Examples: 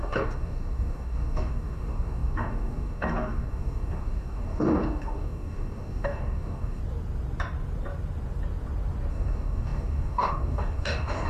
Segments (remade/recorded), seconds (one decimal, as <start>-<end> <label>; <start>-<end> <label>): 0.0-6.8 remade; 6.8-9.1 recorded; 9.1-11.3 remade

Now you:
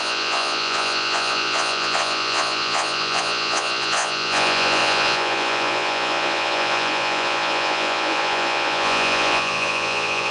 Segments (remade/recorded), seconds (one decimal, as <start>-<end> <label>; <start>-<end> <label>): 0.0-10.3 remade

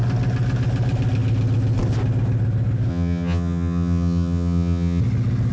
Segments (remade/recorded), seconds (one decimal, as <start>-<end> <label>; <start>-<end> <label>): 0.0-2.9 recorded; 2.9-5.0 remade; 5.0-5.5 recorded

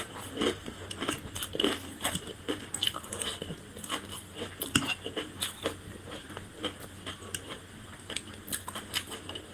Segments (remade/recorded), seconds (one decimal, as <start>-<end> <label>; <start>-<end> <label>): 0.0-1.4 recorded; 1.4-2.6 remade; 2.6-9.5 recorded

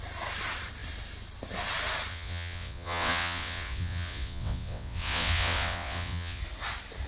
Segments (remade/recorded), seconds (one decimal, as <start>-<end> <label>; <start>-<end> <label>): 0.0-2.1 recorded; 2.1-6.4 remade; 6.4-7.1 recorded